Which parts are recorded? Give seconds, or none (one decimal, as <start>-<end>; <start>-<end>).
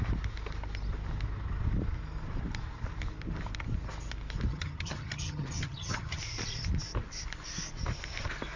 0.0-4.5; 6.2-8.6